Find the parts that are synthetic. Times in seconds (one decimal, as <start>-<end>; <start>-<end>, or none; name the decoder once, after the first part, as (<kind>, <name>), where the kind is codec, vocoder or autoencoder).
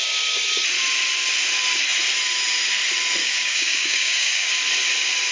3.2-4.5 (codec, DAC)